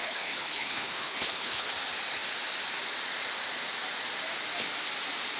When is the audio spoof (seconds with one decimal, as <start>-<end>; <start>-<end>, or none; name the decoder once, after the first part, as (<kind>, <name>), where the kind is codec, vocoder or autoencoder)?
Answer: 0.0-1.7 (codec, HILCodec)